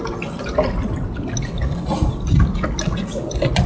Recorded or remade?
recorded